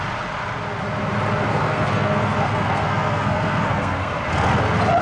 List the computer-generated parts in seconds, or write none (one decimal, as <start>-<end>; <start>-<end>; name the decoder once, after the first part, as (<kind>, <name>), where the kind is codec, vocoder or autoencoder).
1.5-4.2 (codec, SNAC)